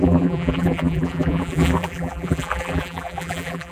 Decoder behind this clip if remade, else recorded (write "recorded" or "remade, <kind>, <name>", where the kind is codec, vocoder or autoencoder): remade, vocoder, BigVGAN v2